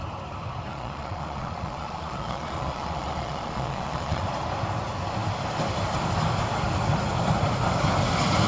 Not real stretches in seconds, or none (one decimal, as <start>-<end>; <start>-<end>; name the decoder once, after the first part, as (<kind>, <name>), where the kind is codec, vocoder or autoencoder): 0.7-4.2 (vocoder, Vocos)